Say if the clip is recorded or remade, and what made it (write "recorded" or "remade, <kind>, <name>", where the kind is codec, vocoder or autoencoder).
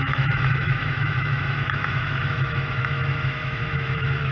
remade, autoencoder, DAC-VAE